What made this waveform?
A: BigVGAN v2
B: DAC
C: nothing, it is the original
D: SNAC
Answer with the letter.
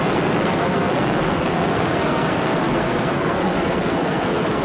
D